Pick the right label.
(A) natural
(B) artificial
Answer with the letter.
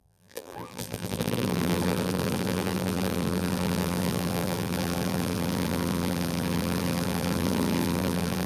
B